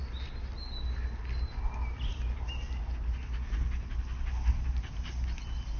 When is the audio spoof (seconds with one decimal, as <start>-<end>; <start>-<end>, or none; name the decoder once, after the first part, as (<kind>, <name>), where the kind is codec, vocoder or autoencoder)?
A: none